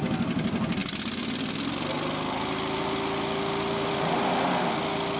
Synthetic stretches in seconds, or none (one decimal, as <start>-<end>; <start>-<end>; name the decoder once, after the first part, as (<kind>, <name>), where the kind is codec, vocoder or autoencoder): none